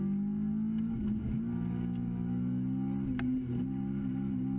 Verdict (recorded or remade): recorded